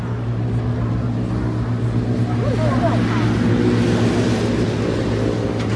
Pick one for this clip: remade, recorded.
recorded